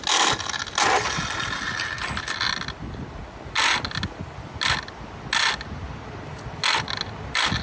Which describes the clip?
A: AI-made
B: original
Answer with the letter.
B